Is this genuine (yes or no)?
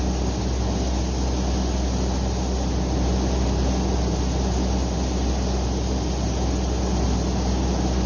yes